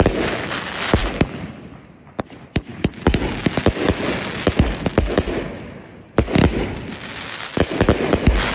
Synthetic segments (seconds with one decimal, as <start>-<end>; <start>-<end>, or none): none